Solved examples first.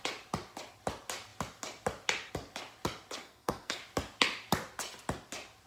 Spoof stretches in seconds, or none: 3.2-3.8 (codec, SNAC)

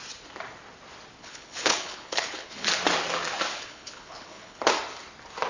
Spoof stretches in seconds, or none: 1.2-2.7 (codec, HILCodec); 3.5-4.7

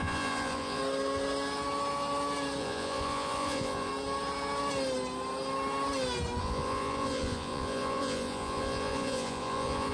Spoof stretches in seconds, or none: 0.0-0.8 (vocoder, Vocos); 2.6-3.9; 6.4-9.9